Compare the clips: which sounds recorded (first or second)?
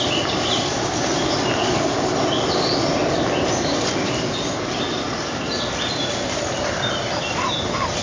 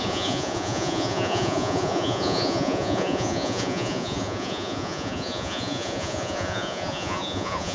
first